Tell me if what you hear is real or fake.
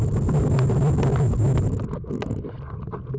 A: real